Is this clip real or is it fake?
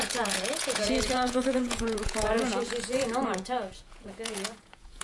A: fake